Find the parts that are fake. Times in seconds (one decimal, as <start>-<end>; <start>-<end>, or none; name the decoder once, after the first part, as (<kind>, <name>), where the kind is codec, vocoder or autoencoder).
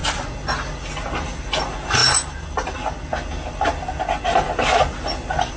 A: none